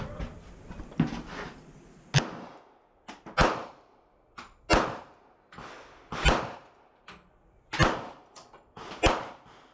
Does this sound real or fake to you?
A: real